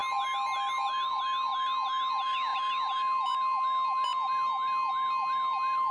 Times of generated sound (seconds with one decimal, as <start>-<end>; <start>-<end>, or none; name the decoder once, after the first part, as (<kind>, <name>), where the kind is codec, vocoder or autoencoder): none